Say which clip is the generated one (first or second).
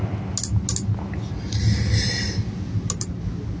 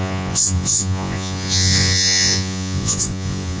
second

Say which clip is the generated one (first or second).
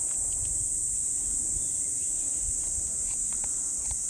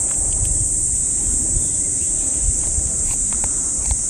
second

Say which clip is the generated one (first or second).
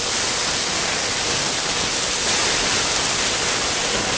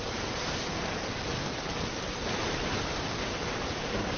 second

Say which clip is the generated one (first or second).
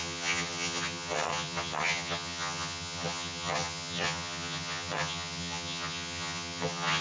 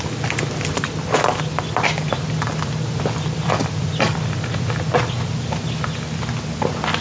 first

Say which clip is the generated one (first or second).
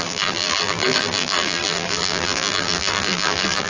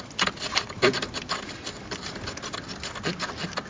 first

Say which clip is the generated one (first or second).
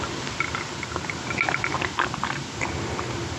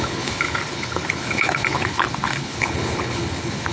second